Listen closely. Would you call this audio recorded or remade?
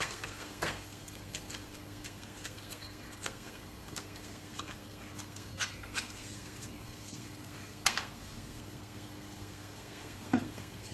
remade